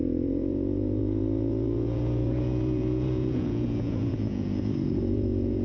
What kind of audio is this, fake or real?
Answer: fake